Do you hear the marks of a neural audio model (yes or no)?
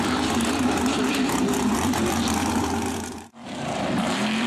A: yes